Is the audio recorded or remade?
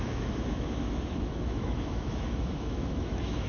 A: remade